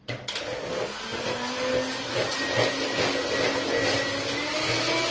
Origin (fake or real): real